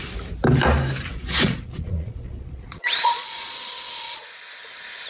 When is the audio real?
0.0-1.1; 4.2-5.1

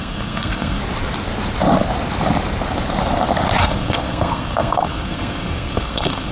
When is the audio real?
0.8-3.6